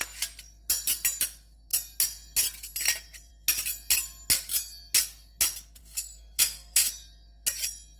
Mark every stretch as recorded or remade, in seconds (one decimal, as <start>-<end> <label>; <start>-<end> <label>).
0.0-5.8 recorded; 5.8-6.9 remade; 6.9-8.0 recorded